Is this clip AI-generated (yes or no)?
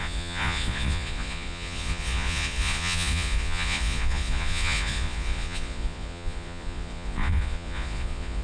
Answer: yes